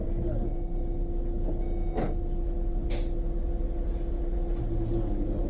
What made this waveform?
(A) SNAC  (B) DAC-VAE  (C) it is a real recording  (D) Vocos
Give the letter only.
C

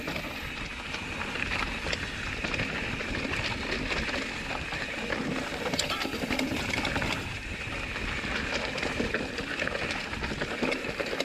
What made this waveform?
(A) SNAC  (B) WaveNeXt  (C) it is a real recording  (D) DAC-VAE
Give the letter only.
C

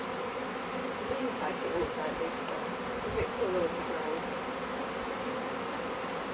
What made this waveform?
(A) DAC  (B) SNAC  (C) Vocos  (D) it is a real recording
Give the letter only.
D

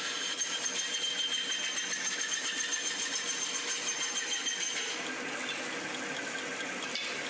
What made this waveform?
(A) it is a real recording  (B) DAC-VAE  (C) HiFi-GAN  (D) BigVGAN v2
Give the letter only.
A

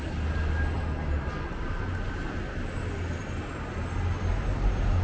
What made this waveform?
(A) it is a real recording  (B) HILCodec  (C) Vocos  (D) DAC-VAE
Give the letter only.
A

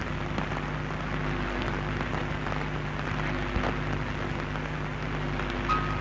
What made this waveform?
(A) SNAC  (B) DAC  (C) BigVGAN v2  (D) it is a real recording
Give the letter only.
D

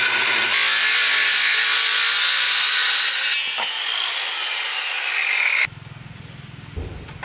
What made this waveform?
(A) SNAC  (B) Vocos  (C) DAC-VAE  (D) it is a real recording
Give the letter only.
D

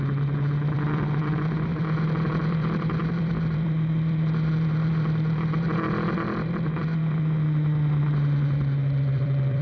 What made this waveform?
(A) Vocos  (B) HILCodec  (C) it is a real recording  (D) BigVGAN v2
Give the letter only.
D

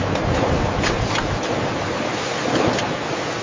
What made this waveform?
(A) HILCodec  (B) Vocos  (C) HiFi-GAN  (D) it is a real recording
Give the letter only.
D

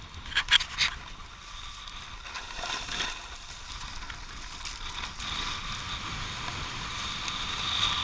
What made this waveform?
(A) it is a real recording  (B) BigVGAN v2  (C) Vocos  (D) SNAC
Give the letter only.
A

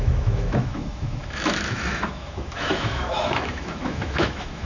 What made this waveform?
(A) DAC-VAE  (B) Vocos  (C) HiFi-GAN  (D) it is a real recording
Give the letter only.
A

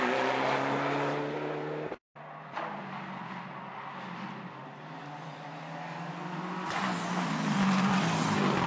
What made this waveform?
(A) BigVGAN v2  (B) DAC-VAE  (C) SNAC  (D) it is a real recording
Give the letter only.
D